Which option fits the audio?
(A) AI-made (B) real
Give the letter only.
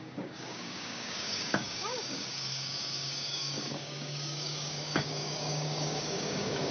A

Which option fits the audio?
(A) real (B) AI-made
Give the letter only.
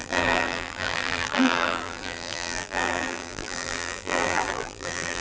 B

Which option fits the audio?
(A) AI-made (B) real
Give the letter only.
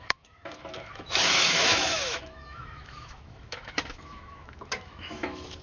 A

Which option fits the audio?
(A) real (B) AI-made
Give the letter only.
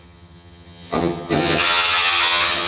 B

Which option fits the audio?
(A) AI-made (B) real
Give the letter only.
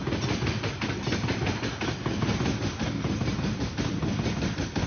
B